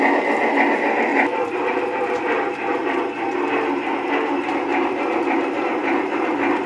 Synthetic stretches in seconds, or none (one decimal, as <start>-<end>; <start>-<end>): 1.1-3.0; 4.7-6.3